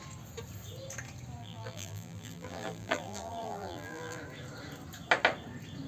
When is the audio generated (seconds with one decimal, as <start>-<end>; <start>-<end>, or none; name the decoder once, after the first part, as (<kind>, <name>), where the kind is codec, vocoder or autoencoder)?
1.4-4.2 (vocoder, BigVGAN v2)